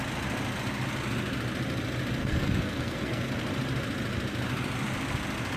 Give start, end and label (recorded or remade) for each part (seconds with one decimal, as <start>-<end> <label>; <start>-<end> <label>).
0.0-2.2 recorded; 2.2-3.3 remade; 3.3-5.6 recorded